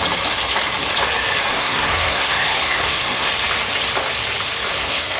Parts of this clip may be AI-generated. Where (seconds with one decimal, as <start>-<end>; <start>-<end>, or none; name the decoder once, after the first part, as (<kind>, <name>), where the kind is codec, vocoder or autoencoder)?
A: 1.5-3.3 (codec, SNAC); 4.7-5.2